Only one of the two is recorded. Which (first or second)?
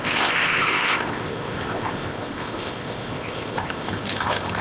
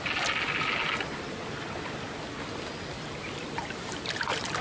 second